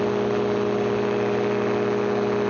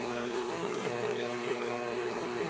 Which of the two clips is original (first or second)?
first